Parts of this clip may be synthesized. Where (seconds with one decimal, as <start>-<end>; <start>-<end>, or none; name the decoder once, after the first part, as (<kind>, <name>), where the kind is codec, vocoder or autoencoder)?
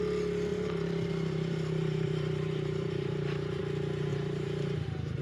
0.5-3.6 (vocoder, BigVGAN v2); 4.1-5.2